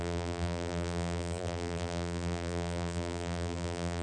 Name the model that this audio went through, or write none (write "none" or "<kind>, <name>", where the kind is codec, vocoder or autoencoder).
vocoder, BigVGAN v2